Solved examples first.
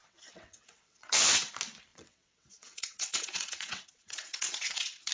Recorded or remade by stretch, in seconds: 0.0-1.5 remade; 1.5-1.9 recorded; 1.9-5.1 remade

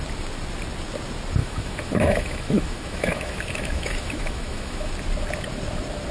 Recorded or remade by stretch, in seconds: 0.0-1.4 recorded; 1.4-4.9 remade; 4.9-6.1 recorded

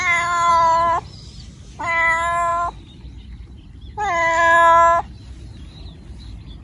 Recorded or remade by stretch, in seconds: 0.0-6.6 recorded

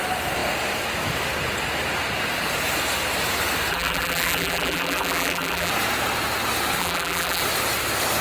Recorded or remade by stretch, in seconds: 0.0-3.7 recorded; 3.7-5.7 remade; 5.7-6.8 recorded; 6.8-7.4 remade; 7.4-8.2 recorded

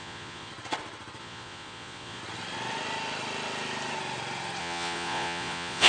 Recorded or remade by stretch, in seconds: 0.0-0.5 remade; 0.5-1.2 recorded; 1.2-2.2 remade; 2.2-4.6 recorded; 4.6-5.9 remade

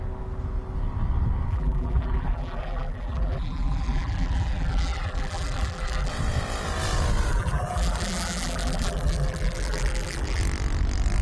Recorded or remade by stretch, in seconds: 0.0-1.5 recorded; 1.5-6.1 remade; 6.1-7.3 recorded; 7.3-10.4 remade; 10.4-11.2 recorded

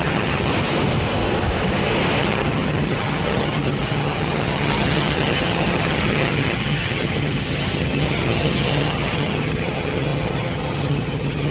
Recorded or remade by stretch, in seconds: 0.0-0.5 remade; 0.5-2.2 recorded; 2.2-11.5 remade